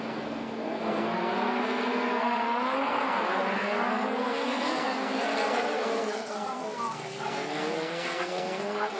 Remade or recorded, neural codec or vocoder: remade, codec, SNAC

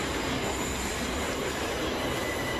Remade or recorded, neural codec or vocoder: recorded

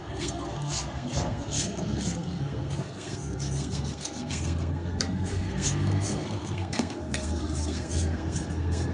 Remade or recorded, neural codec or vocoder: remade, codec, SNAC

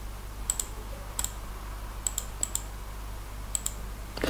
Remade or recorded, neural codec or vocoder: recorded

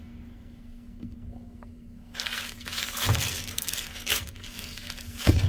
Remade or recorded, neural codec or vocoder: remade, codec, SNAC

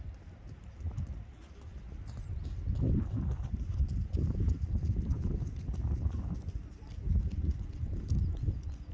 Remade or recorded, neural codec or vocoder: recorded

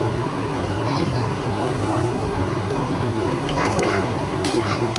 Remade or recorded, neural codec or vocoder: remade, codec, SNAC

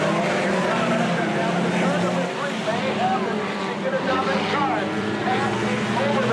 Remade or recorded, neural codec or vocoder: recorded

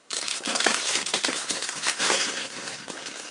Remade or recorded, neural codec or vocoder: remade, codec, SNAC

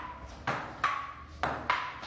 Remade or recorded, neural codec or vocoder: recorded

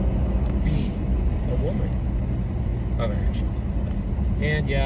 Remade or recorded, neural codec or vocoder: recorded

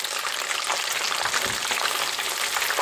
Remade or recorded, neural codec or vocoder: recorded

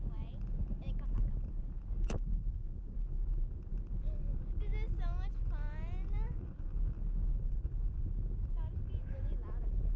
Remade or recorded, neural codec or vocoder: recorded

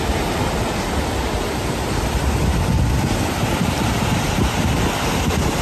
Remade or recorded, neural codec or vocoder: recorded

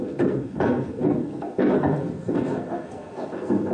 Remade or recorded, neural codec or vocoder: remade, codec, SNAC